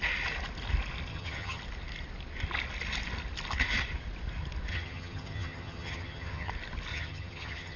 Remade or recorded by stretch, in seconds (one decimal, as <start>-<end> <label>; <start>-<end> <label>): 0.0-1.1 recorded; 1.1-1.6 remade; 1.6-4.7 recorded; 4.7-6.5 remade; 6.5-6.9 recorded; 6.9-7.8 remade